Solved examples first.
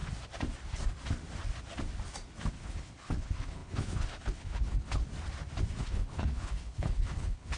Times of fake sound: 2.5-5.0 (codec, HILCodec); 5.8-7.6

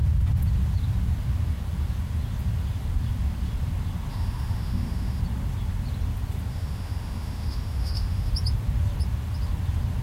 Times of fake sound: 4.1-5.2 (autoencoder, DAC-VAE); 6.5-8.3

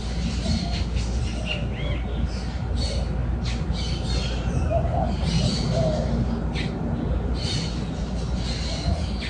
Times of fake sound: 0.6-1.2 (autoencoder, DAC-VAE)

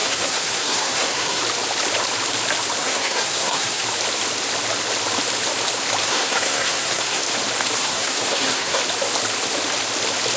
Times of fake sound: 0.0-1.4 (codec, SNAC); 2.8-3.8; 6.0-7.2; 7.8-8.8

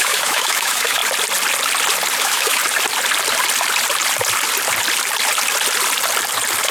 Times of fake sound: 0.0-1.0 (autoencoder, DAC-VAE); 2.2-2.6

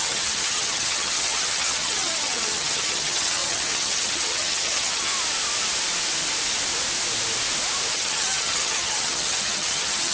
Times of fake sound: 0.0-5.1 (vocoder, HiFi-GAN); 7.9-10.1